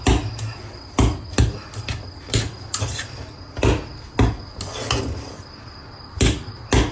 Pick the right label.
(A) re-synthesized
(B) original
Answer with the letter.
B